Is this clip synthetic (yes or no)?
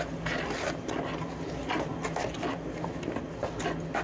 no